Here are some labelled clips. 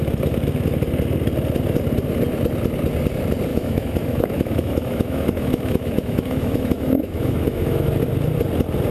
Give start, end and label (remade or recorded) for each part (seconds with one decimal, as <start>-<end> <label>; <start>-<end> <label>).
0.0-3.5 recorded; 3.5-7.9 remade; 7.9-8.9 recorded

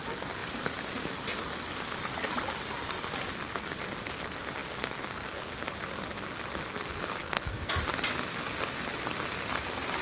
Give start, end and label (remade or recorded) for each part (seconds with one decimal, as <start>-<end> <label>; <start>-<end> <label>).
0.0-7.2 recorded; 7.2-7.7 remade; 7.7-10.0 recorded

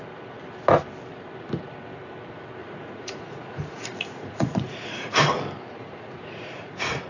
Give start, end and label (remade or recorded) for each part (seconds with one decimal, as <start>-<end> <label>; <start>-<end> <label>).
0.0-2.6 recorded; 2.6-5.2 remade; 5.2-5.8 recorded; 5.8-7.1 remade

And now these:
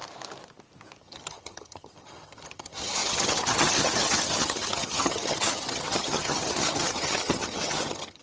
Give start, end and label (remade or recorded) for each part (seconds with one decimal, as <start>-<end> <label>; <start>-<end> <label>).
0.0-1.0 recorded; 1.0-8.2 remade

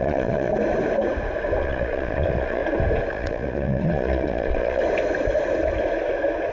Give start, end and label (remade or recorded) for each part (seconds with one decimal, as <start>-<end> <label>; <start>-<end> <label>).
0.0-0.5 remade; 0.5-1.6 recorded; 1.6-2.6 remade; 2.6-3.1 recorded; 3.1-4.8 remade; 4.8-6.5 recorded